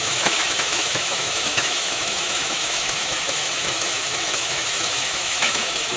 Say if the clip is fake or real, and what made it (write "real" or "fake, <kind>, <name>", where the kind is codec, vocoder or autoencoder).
fake, autoencoder, DAC-VAE